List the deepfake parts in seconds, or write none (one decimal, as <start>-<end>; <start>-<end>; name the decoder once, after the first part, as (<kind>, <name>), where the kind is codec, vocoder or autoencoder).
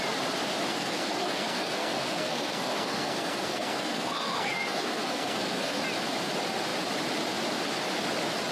0.7-5.8 (codec, SNAC)